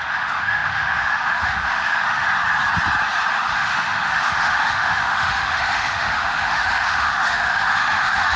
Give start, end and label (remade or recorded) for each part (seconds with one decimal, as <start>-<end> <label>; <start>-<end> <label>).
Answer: 0.0-2.3 remade; 2.3-3.3 recorded; 3.3-8.4 remade